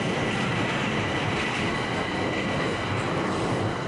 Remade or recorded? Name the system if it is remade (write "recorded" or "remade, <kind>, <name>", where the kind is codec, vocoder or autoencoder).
recorded